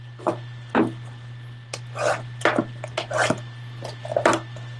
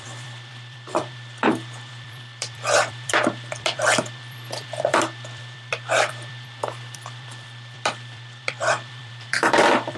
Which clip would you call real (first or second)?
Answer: first